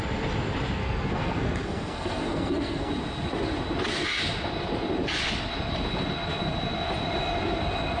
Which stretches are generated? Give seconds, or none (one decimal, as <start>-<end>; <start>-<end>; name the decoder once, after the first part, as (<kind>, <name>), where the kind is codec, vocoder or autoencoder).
0.8-2.9 (codec, SNAC)